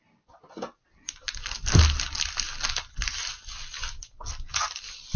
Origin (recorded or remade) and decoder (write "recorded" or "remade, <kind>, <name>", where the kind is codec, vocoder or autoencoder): recorded